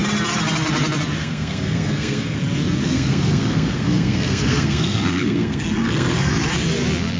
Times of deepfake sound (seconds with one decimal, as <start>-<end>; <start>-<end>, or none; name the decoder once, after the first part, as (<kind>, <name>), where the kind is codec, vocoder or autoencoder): 1.2-2.4 (codec, SNAC); 2.8-6.3